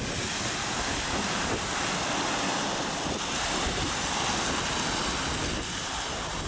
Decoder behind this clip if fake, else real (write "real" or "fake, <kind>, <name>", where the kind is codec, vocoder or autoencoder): real